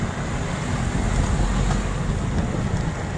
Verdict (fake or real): real